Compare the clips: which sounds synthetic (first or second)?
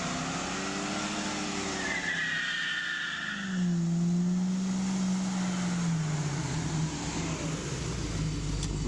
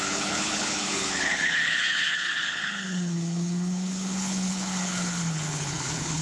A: second